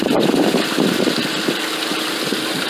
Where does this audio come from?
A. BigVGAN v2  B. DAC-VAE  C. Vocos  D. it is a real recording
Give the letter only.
A